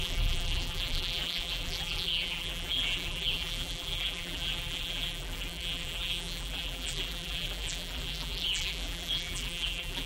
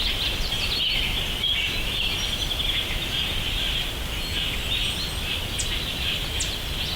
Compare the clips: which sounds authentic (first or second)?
second